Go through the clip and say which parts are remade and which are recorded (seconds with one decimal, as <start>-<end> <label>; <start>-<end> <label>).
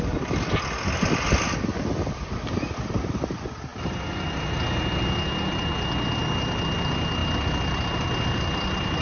0.0-7.2 recorded; 7.2-9.0 remade